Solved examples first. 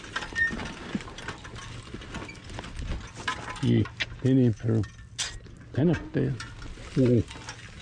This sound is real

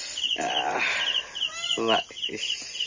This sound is real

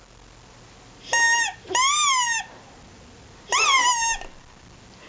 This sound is real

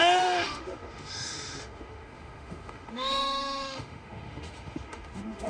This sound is fake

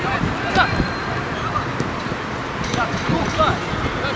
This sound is real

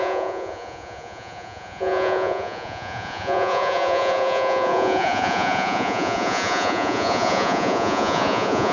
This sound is fake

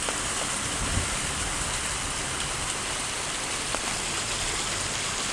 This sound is real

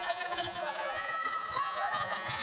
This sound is fake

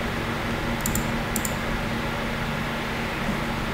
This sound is real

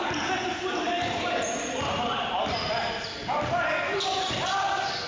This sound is fake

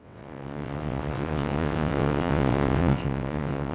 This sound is fake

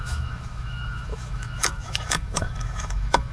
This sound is fake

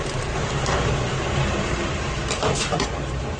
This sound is real